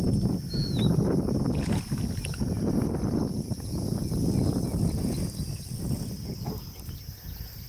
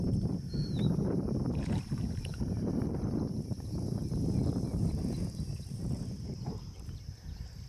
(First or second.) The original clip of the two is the first